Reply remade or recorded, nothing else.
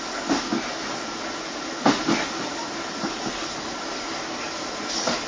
recorded